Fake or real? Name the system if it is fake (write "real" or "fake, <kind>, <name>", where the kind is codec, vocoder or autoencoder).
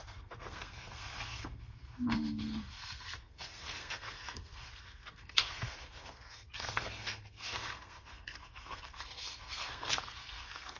fake, codec, SNAC